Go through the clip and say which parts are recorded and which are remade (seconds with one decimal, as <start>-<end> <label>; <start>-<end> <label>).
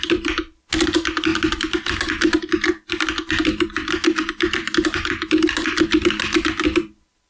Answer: 0.0-7.3 recorded